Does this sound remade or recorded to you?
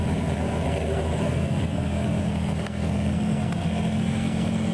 remade